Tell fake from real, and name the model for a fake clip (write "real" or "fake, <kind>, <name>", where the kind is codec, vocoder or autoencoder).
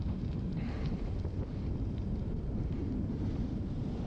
fake, vocoder, BigVGAN v2